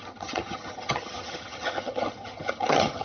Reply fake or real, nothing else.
fake